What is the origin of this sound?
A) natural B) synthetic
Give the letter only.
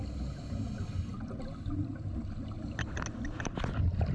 A